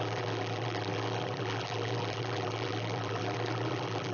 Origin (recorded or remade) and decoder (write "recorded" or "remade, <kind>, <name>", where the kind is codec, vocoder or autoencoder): remade, vocoder, BigVGAN v2